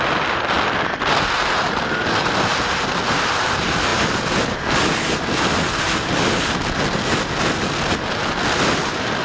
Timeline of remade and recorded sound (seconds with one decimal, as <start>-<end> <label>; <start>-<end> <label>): 0.0-9.2 recorded